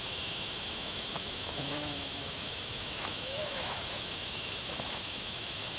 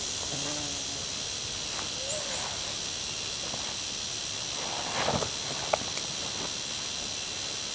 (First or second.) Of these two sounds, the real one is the second